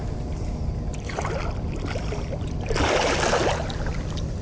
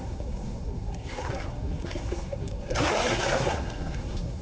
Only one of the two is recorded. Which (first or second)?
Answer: first